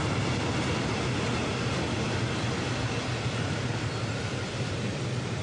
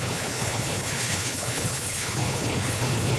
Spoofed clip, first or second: second